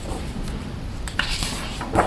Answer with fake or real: real